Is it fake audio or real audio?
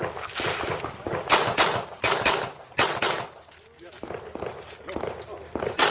real